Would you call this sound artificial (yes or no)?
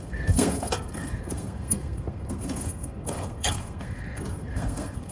yes